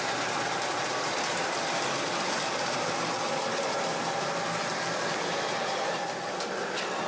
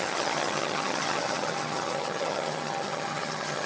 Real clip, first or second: first